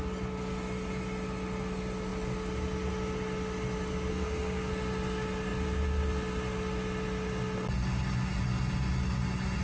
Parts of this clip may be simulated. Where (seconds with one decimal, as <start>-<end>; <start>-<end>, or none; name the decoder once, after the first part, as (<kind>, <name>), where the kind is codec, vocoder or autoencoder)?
4.1-4.7 (codec, SNAC)